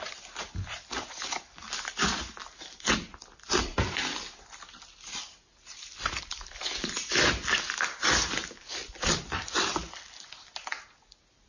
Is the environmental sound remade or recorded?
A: recorded